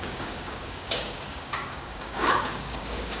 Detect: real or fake fake